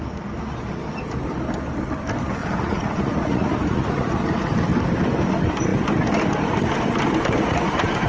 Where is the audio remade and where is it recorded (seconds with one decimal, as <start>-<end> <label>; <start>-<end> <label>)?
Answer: 0.0-2.4 recorded; 2.4-4.2 remade; 4.2-8.1 recorded